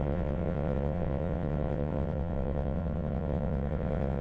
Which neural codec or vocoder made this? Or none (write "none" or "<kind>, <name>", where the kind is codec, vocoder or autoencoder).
vocoder, WaveNeXt